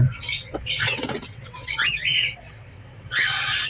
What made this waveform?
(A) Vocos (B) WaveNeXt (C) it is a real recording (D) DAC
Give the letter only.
B